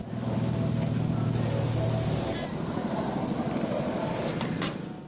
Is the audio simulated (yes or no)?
no